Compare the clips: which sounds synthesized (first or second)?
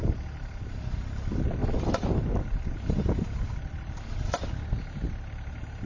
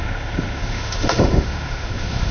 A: second